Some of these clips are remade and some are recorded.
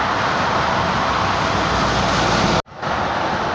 recorded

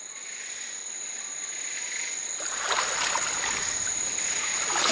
recorded